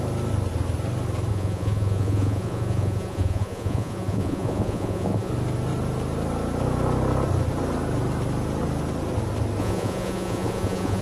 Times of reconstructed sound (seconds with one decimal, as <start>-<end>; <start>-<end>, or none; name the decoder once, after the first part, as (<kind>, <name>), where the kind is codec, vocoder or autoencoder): 1.3-5.3 (vocoder, Vocos); 9.6-11.0